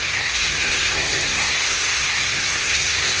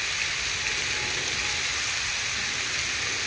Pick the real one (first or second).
second